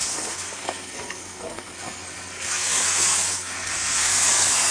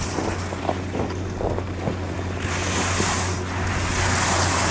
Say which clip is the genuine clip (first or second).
second